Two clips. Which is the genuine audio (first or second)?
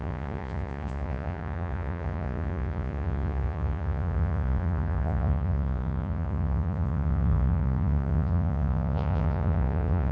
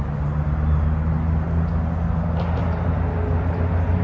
second